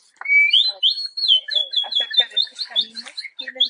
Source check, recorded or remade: recorded